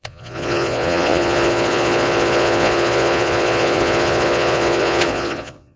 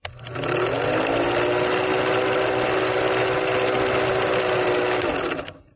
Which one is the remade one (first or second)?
first